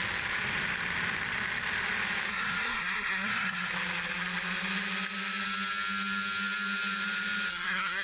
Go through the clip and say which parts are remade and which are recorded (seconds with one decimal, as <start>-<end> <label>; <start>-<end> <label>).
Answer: 0.0-2.3 recorded; 2.3-3.7 remade; 3.7-7.5 recorded; 7.5-8.0 remade